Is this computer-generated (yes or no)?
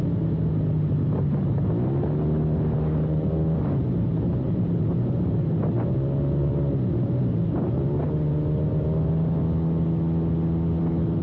no